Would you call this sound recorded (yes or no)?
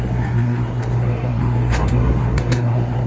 no